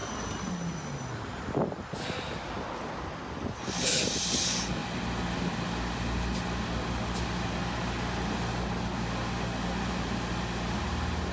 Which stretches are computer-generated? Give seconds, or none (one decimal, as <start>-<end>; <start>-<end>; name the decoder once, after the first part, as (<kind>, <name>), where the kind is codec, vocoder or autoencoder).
none